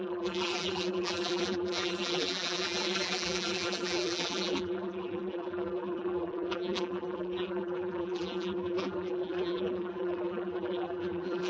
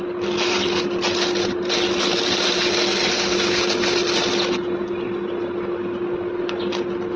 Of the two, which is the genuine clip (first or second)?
second